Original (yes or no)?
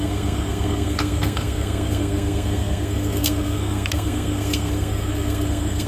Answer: no